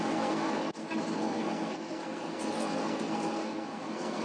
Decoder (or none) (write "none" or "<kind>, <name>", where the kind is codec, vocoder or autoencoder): codec, SNAC